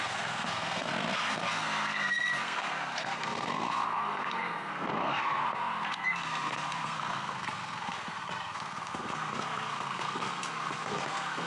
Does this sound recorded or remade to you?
remade